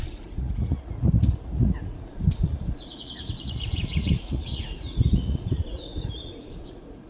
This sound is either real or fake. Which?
fake